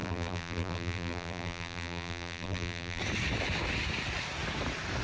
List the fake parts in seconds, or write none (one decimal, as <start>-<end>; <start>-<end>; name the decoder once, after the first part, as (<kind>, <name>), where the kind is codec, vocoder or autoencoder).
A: 0.0-3.0 (vocoder, BigVGAN v2)